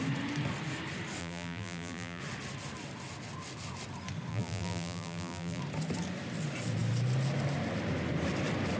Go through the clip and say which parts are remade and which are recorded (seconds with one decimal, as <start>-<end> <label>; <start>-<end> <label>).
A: 0.0-1.2 recorded; 1.2-2.2 remade; 2.2-4.3 recorded; 4.3-5.6 remade; 5.6-8.8 recorded